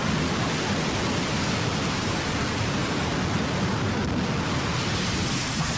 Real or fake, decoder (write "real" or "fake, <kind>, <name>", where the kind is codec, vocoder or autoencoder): real